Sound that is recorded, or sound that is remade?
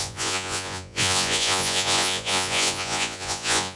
remade